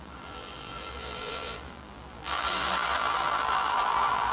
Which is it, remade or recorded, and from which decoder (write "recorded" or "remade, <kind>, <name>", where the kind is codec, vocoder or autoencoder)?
remade, vocoder, BigVGAN v2